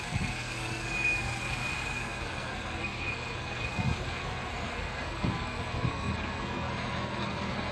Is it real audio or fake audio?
fake